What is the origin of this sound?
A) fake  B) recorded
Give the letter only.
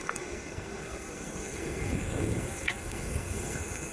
A